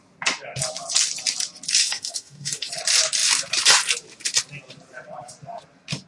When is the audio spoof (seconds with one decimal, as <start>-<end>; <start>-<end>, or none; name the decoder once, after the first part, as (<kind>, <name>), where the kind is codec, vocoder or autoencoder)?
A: 1.8-2.7 (autoencoder, DAC-VAE)